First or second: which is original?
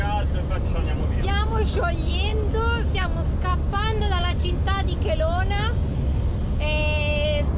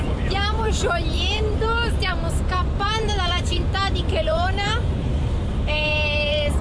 first